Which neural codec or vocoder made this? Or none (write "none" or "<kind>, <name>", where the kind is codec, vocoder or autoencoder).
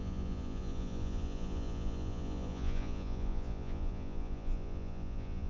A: vocoder, Vocos